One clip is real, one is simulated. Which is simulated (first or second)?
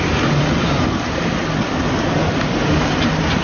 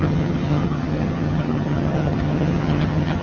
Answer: second